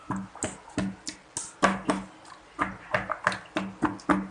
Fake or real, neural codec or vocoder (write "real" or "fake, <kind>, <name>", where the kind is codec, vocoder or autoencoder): real